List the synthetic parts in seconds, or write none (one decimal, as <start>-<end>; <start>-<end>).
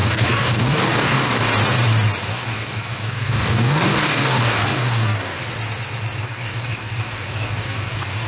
0.0-1.5; 2.3-5.4; 6.2-8.3